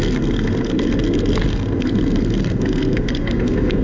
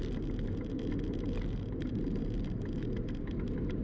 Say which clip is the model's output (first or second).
first